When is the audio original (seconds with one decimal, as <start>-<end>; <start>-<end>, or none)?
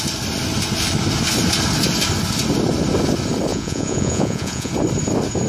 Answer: 0.0-3.5; 4.7-5.5